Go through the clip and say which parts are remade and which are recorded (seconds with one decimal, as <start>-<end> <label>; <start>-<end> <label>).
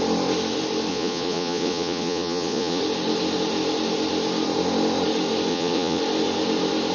0.0-0.9 recorded; 0.9-2.8 remade; 2.8-5.5 recorded; 5.5-6.0 remade; 6.0-6.9 recorded